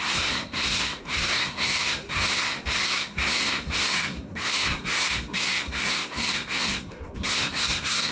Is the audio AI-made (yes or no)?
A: yes